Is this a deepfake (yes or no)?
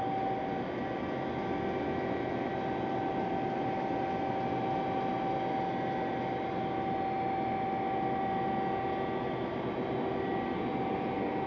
no